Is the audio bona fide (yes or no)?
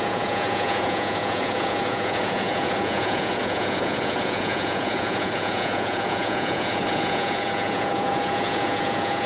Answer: no